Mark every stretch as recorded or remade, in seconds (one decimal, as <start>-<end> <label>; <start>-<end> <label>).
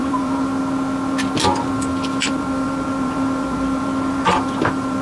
0.0-0.5 remade; 0.5-1.7 recorded; 1.7-5.0 remade